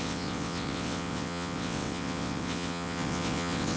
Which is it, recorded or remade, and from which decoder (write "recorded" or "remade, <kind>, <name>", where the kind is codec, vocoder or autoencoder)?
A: remade, vocoder, WaveNeXt